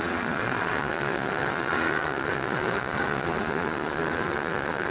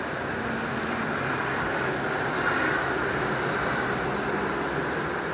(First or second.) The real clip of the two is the second